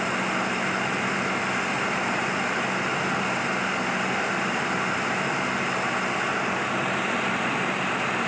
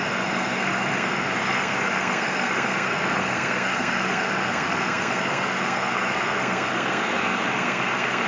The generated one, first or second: second